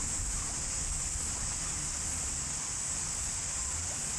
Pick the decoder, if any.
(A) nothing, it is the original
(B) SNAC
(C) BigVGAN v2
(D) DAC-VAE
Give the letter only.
A